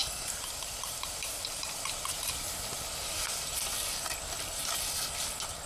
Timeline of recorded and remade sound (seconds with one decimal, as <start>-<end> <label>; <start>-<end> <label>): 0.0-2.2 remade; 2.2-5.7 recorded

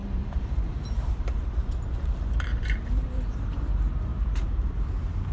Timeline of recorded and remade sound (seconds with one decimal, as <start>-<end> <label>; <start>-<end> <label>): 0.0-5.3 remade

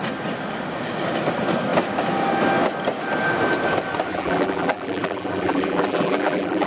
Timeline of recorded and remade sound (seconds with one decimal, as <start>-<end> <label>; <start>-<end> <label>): 0.0-4.1 recorded; 4.1-6.7 remade

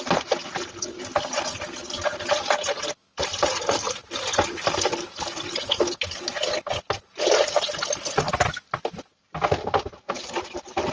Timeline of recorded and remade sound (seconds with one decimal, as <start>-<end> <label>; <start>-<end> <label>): 0.0-10.2 recorded; 10.2-10.9 remade